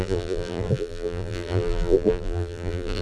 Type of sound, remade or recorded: remade